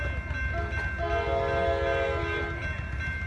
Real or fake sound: real